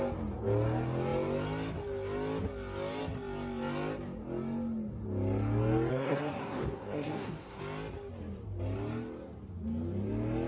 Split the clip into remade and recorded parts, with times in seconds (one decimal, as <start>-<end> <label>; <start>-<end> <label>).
0.0-5.9 recorded; 5.9-7.6 remade; 7.6-10.5 recorded